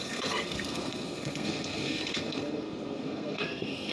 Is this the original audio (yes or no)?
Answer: no